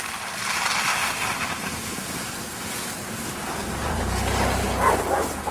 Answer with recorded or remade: recorded